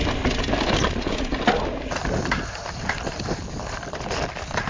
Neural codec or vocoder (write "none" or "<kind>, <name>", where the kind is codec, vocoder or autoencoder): none